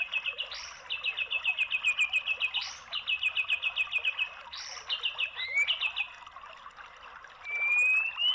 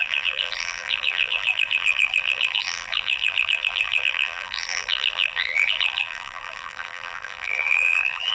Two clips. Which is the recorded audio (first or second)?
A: first